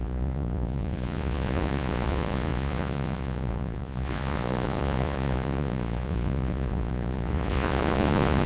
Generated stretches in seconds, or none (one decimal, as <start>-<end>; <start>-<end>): 0.0-8.5

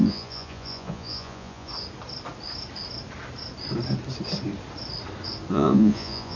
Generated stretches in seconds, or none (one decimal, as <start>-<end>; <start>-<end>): 0.0-1.7; 5.5-6.4